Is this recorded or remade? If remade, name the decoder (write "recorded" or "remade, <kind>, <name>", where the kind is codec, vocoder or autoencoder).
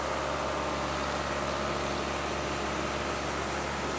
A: recorded